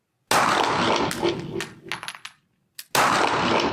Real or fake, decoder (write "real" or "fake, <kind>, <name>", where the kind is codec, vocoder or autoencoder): real